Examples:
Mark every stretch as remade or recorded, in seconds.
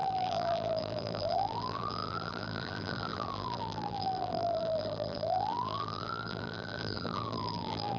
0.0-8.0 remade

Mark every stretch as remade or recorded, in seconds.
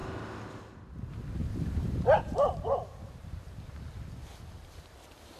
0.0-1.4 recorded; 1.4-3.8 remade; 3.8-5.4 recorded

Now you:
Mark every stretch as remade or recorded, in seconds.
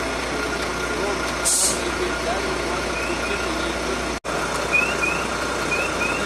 0.0-6.3 recorded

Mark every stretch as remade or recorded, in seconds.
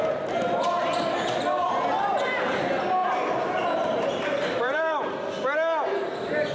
0.0-3.0 recorded; 3.0-5.1 remade; 5.1-6.5 recorded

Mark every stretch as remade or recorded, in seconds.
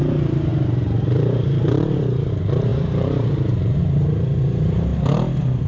0.0-4.9 remade; 4.9-5.7 recorded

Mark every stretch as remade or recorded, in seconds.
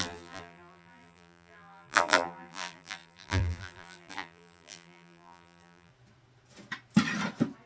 0.0-5.9 remade; 5.9-7.7 recorded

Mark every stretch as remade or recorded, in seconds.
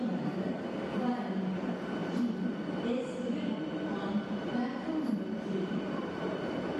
0.0-2.0 recorded; 2.0-6.1 remade; 6.1-6.8 recorded